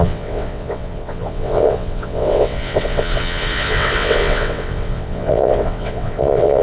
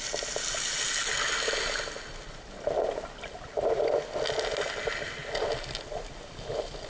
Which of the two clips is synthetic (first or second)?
first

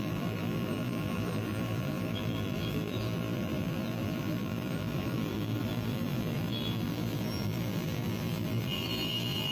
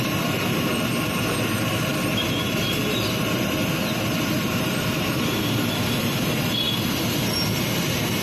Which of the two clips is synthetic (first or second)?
first